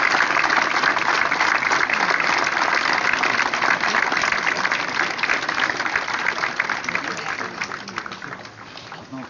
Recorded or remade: recorded